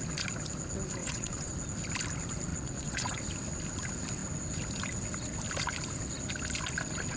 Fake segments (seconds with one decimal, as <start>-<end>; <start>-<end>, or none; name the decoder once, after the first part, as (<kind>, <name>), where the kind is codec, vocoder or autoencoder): 1.0-1.5 (vocoder, WaveNeXt); 2.5-3.2